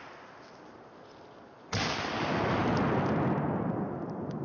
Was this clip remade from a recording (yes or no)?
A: no